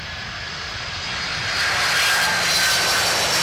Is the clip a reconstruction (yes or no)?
no